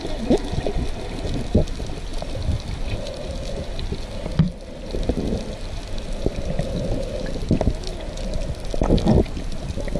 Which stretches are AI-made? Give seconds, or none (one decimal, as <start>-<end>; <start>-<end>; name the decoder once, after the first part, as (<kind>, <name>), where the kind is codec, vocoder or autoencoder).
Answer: none